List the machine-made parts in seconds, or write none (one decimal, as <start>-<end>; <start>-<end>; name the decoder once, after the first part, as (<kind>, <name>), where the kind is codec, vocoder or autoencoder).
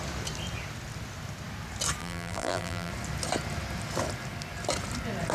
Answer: 2.0-2.9 (vocoder, BigVGAN v2)